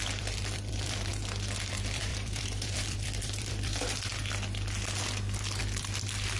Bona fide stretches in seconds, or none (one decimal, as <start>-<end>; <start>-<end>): 1.1-1.7; 4.1-5.6